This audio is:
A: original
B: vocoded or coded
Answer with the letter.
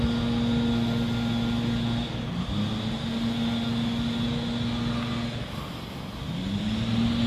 A